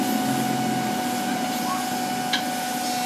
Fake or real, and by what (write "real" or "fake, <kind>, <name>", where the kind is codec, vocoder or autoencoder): real